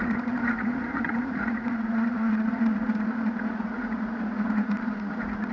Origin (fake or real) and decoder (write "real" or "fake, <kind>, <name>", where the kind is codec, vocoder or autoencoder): fake, vocoder, Vocos